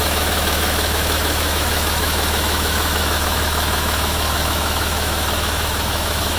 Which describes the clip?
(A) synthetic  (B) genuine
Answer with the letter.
A